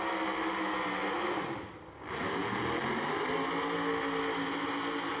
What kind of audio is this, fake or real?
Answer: real